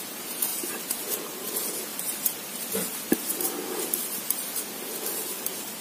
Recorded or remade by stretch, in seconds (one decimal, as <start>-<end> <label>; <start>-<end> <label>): 0.0-0.5 remade; 0.5-1.5 recorded; 1.5-1.9 remade; 1.9-5.8 recorded